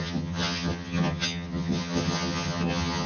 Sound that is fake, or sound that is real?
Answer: fake